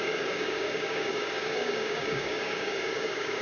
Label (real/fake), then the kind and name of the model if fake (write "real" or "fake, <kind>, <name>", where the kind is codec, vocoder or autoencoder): fake, codec, DAC